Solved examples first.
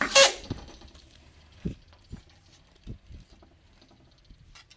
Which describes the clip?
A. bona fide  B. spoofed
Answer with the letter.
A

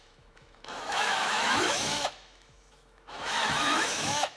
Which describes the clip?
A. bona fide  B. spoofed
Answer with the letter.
B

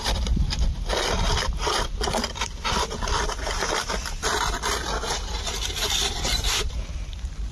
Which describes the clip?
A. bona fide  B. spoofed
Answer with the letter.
B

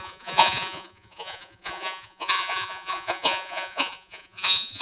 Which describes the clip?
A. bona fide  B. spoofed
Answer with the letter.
B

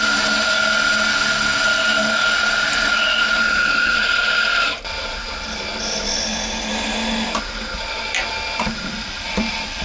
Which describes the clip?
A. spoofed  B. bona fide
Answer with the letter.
B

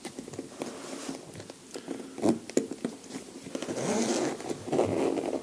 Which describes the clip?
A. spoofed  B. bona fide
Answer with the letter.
B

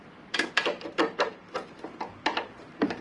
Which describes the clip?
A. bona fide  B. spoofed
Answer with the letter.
B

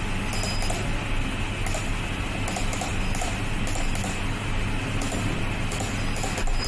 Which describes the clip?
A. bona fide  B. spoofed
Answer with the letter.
A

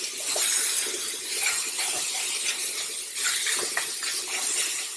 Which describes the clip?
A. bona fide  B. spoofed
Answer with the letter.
A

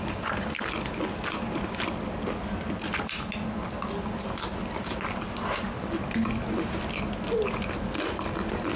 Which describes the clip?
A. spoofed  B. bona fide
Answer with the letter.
B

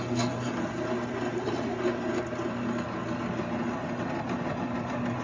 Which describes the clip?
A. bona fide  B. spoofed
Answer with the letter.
A